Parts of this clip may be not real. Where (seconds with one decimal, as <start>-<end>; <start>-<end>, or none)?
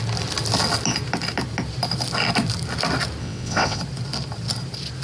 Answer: 3.2-3.8